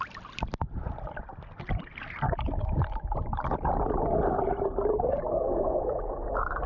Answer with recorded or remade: recorded